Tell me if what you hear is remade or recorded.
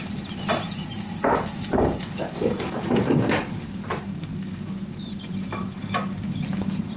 remade